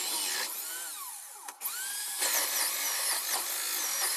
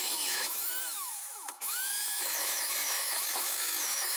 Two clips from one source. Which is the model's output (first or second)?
second